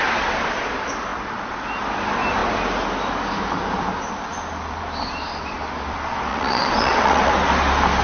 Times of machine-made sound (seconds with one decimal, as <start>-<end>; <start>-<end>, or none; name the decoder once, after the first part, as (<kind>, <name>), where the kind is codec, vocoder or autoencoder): 6.3-7.3 (vocoder, WaveNeXt)